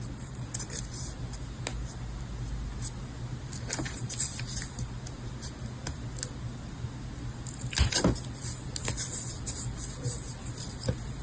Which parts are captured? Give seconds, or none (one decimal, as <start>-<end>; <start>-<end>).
0.0-11.2